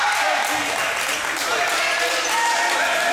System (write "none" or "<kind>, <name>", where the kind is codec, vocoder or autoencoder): none